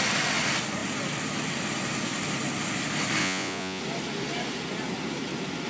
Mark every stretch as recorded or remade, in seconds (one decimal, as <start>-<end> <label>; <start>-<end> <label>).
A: 0.0-3.2 recorded; 3.2-3.8 remade; 3.8-5.7 recorded